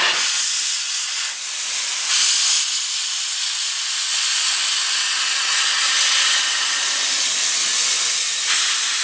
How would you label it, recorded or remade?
recorded